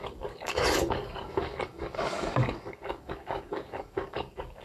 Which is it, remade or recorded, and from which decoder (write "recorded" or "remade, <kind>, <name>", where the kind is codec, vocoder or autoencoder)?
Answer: remade, codec, DAC